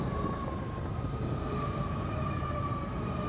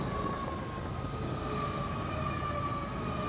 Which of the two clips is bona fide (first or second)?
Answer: second